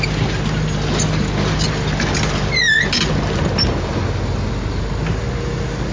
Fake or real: real